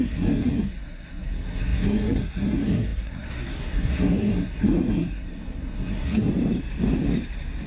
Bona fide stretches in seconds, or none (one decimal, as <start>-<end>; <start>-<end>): 6.3-7.7